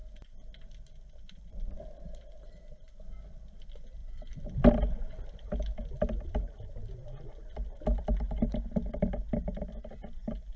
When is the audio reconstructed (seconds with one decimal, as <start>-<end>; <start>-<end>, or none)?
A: none